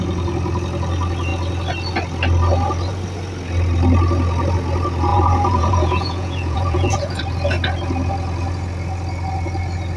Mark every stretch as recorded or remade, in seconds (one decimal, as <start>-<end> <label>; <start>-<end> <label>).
0.0-5.1 recorded; 5.1-7.2 remade; 7.2-10.0 recorded